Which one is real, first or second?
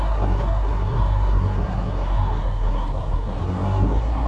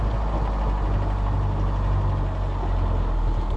second